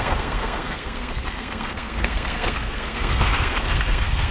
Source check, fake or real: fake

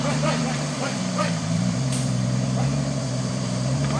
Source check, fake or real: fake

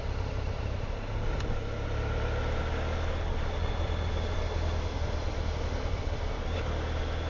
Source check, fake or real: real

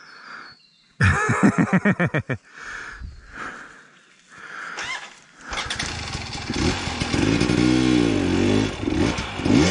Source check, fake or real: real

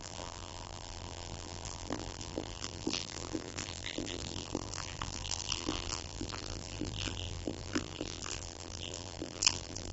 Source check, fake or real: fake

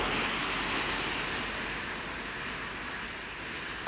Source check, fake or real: real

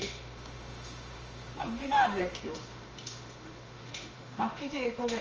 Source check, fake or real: fake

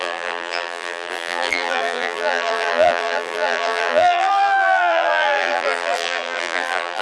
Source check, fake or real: fake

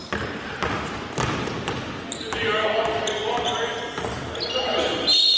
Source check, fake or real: real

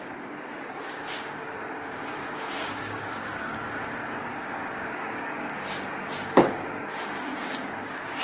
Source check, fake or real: fake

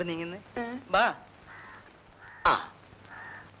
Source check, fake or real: real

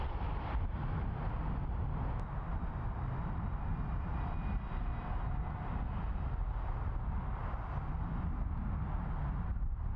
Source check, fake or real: real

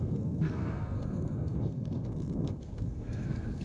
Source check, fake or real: fake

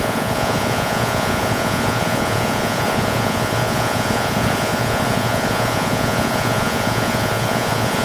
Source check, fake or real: fake